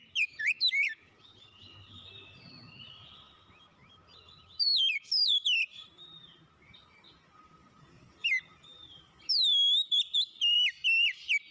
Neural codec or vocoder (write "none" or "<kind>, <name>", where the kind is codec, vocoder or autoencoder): vocoder, BigVGAN v2